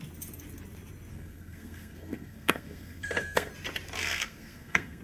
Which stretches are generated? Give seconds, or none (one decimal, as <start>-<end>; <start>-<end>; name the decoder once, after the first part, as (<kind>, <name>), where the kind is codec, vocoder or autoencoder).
1.1-3.5 (codec, SNAC); 4.0-5.0